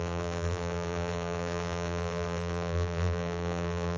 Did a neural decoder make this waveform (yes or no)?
yes